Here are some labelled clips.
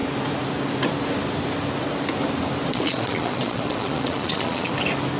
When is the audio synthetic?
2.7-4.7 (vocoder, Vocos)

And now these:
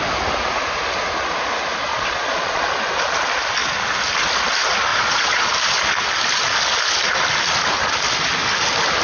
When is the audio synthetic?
1.9-2.6 (vocoder, Vocos); 4.9-5.5

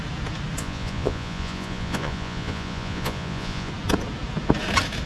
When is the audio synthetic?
0.6-3.7 (vocoder, Vocos)

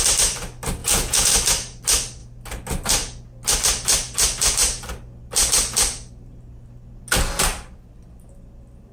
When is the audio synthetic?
0.8-1.3 (vocoder, Vocos)

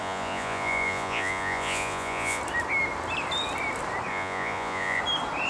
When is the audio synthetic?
0.0-2.4 (vocoder, Vocos); 4.1-5.0